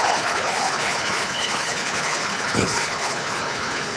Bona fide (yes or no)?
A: no